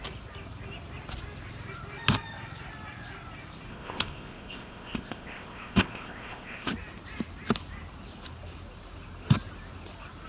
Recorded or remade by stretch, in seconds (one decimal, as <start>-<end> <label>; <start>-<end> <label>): 0.0-3.7 recorded; 3.7-6.7 remade; 6.7-10.3 recorded